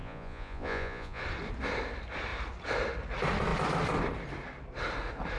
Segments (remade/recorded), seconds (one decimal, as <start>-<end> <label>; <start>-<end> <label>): 0.0-1.2 remade; 1.2-5.4 recorded